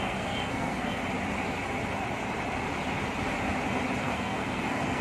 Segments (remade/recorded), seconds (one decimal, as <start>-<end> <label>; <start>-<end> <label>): 0.0-1.0 remade; 1.0-4.0 recorded; 4.0-5.0 remade